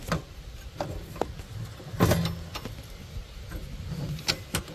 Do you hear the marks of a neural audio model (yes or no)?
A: no